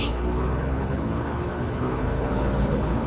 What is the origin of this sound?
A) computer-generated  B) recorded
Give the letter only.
A